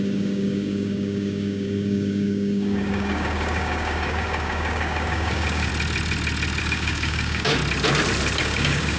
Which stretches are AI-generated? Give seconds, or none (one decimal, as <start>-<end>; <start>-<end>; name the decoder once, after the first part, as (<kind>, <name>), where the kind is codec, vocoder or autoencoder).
0.0-5.7 (codec, DAC); 6.6-7.6; 8.4-9.0